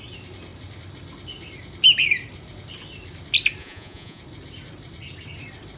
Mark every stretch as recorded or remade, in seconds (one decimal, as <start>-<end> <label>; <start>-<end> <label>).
0.0-3.6 recorded; 3.6-4.2 remade; 4.2-5.8 recorded